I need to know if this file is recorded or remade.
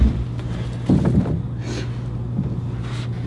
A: recorded